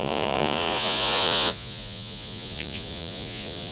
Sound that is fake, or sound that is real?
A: fake